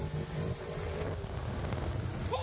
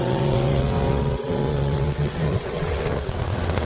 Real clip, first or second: first